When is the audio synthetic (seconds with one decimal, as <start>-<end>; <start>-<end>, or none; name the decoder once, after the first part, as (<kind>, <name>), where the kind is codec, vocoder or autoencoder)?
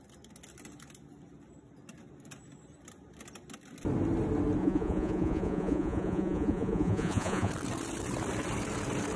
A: 4.6-7.5 (vocoder, Vocos)